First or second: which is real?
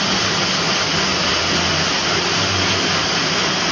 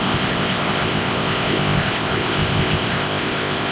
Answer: first